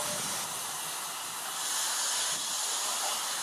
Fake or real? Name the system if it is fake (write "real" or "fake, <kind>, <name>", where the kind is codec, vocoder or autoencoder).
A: real